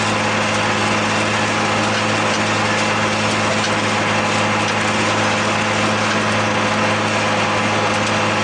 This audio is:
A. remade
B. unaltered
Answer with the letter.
B